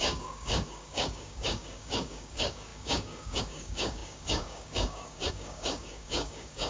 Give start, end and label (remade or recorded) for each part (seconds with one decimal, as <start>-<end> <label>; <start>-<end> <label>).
0.0-6.7 remade